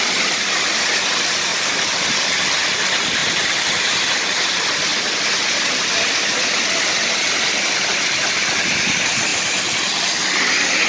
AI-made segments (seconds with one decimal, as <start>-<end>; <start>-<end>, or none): 1.5-2.0; 3.2-4.0